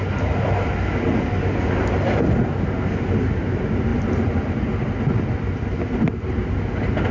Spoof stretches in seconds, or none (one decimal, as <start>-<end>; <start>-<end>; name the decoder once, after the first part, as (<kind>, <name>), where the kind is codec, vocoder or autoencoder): none